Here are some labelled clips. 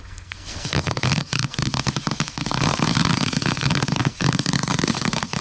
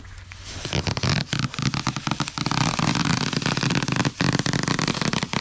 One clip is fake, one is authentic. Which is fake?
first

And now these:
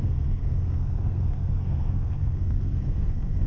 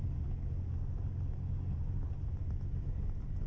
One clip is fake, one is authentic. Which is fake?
first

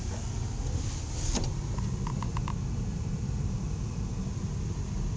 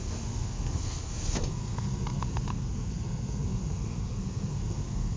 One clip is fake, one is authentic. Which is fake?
second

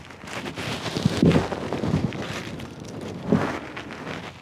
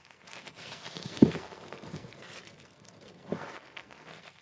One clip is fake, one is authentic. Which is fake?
second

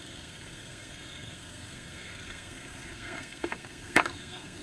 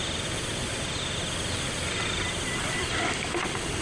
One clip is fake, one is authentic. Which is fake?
first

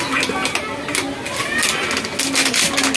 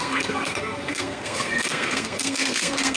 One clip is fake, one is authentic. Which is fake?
second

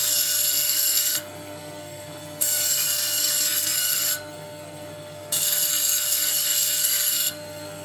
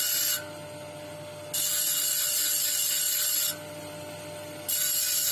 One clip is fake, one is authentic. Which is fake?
first